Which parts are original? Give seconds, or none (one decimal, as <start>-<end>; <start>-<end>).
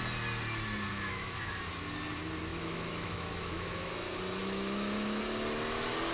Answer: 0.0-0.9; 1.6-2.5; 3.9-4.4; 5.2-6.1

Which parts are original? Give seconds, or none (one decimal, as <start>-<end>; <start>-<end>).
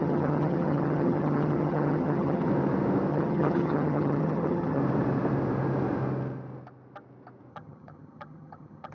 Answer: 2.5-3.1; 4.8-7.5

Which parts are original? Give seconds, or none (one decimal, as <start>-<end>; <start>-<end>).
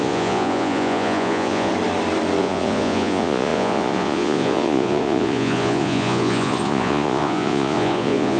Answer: 1.7-2.4